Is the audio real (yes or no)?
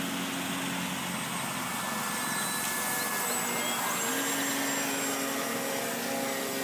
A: yes